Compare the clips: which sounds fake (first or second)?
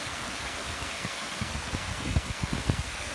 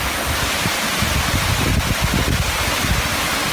first